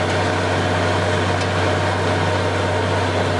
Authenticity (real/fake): real